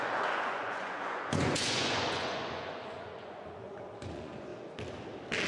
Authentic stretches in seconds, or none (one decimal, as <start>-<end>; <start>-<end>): 4.5-5.5